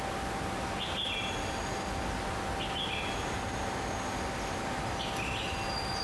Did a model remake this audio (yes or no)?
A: no